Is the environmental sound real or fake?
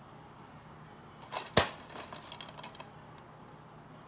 real